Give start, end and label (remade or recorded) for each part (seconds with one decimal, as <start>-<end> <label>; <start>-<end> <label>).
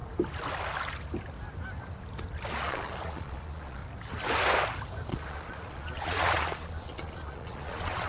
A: 0.0-2.5 recorded; 2.5-3.8 remade; 3.8-5.1 recorded; 5.1-8.1 remade